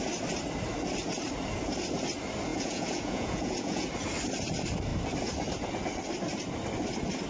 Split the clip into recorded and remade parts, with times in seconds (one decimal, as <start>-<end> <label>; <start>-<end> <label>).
0.0-2.5 recorded; 2.5-3.9 remade; 3.9-7.3 recorded